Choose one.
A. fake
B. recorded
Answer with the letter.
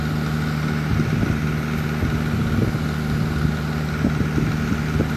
B